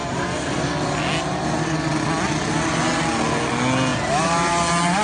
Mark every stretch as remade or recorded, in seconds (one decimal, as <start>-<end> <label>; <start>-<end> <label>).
0.0-5.0 recorded